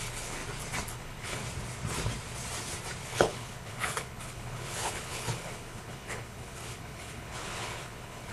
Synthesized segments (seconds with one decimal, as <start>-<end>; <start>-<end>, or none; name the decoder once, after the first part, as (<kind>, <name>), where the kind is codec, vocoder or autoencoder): 0.0-0.4 (codec, HILCodec); 0.9-1.4; 3.0-8.3